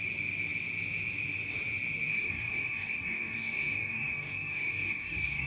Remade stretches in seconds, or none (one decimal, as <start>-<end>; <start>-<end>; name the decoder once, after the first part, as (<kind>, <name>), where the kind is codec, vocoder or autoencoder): 2.1-5.5 (codec, DAC)

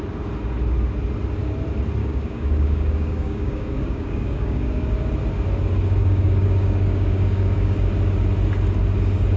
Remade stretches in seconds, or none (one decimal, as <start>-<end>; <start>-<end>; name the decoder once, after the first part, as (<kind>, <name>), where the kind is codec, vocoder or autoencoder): 2.0-4.9 (codec, DAC); 6.0-7.9